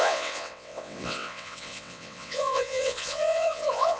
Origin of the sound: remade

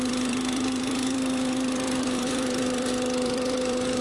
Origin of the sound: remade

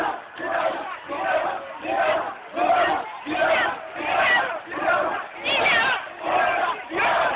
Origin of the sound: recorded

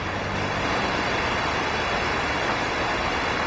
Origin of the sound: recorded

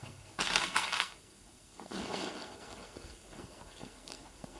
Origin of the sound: remade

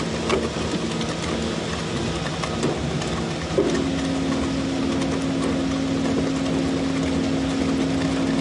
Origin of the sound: recorded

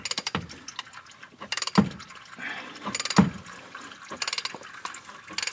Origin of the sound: recorded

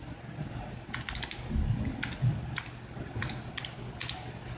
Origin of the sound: recorded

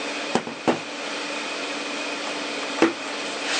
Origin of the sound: recorded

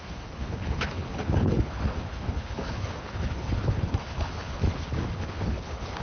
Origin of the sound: remade